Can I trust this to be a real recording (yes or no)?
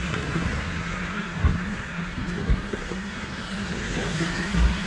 no